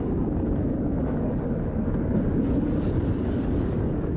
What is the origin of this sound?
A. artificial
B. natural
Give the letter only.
A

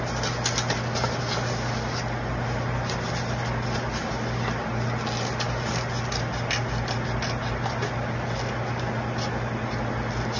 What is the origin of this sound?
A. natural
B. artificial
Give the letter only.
A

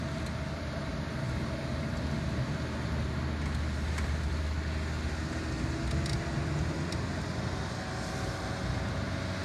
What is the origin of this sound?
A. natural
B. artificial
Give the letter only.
A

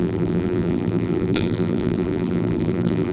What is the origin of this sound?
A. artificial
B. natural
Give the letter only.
A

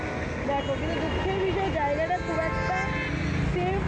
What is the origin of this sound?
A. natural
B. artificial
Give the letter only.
A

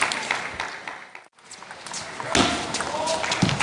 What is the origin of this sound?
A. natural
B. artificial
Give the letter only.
A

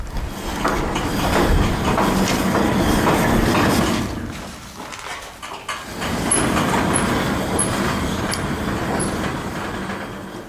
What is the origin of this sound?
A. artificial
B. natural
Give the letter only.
B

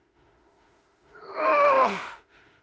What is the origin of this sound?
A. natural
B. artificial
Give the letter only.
B